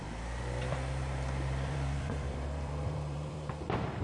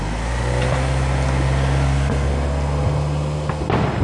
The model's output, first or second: first